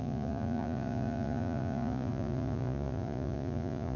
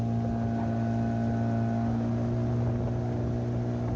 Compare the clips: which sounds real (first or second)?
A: second